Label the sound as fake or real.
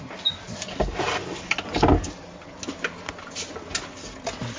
real